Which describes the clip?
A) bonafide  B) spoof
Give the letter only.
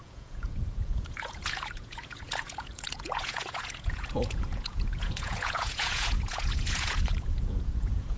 B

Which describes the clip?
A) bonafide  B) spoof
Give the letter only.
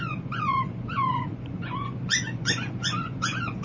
B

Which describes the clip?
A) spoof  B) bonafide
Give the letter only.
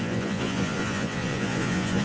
A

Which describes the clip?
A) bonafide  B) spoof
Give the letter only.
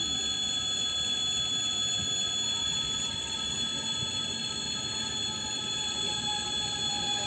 A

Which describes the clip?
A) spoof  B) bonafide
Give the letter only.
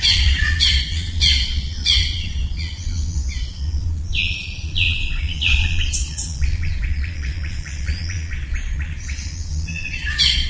A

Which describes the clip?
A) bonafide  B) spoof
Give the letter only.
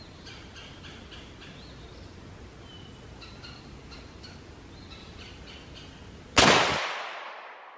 A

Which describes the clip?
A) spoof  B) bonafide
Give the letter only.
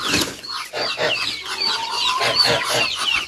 A